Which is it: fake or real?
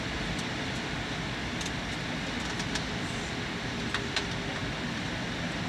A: real